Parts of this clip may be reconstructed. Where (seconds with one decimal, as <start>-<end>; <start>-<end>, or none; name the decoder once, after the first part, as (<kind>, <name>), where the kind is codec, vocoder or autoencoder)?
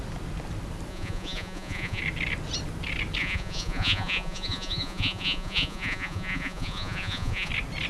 0.9-2.0 (vocoder, Vocos); 3.2-7.5